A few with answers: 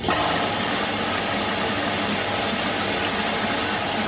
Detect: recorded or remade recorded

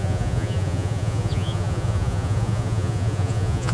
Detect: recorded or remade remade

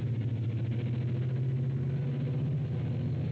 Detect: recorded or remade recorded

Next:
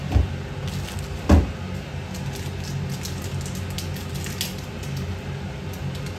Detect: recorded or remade recorded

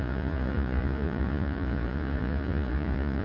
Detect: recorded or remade remade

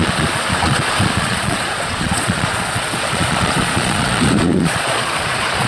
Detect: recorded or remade remade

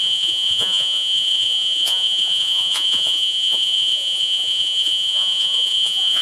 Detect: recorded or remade remade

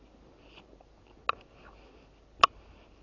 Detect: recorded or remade recorded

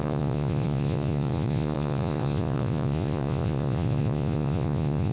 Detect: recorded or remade remade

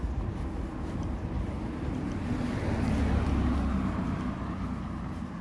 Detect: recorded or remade recorded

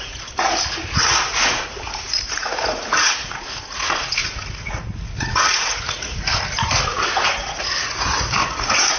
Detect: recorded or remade remade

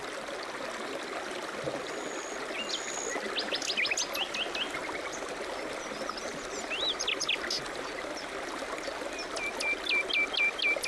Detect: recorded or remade recorded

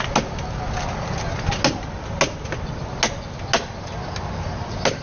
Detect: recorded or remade recorded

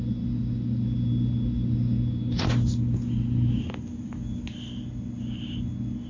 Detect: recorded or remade recorded